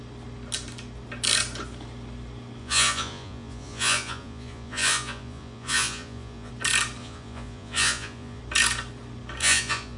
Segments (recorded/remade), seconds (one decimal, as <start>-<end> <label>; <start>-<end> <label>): 0.0-2.6 recorded; 2.6-6.5 remade; 6.5-7.0 recorded; 7.0-8.4 remade; 8.4-9.4 recorded; 9.4-10.0 remade